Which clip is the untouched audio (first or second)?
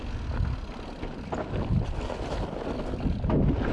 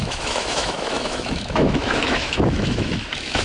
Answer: first